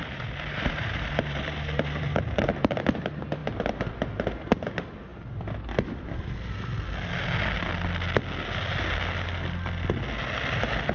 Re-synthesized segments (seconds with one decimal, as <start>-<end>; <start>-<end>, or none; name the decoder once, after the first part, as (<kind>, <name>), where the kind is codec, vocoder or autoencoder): 0.0-2.8 (vocoder, BigVGAN v2)